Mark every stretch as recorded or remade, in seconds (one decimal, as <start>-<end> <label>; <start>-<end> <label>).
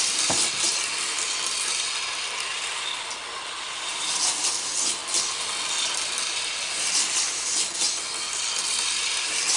0.0-9.6 recorded